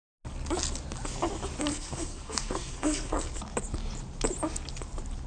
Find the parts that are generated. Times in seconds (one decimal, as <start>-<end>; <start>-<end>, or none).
1.7-3.4